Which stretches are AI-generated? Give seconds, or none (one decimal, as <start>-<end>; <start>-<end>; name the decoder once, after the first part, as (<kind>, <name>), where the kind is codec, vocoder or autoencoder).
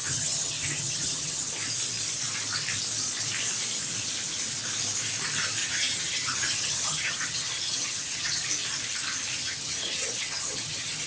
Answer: 0.0-1.5 (vocoder, HiFi-GAN); 5.6-8.5; 9.4-11.1